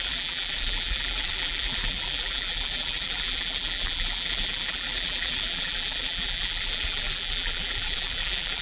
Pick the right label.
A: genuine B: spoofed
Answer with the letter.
B